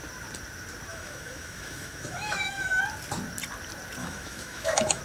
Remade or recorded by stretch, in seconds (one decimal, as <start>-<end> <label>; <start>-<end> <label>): 0.0-0.9 recorded; 0.9-2.8 remade; 2.8-4.0 recorded; 4.0-5.0 remade